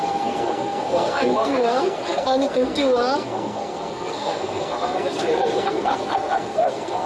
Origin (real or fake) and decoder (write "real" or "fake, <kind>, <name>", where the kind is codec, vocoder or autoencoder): fake, codec, SNAC